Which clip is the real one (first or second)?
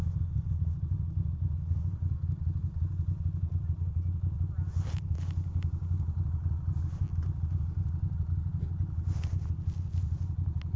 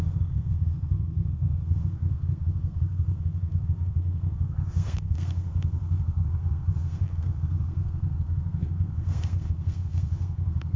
first